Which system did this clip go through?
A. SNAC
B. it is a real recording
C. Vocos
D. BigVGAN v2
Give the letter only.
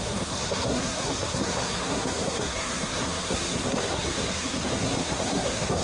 A